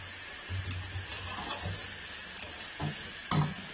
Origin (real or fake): real